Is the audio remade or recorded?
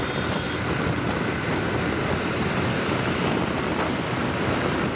recorded